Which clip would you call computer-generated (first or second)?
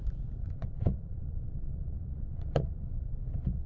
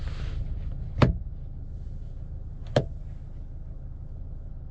first